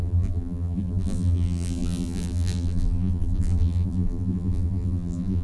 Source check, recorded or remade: remade